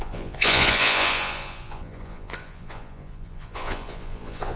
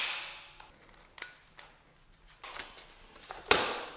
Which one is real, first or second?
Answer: second